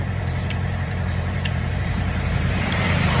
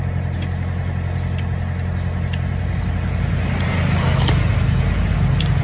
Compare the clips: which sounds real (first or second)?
second